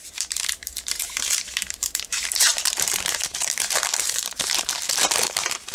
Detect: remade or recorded remade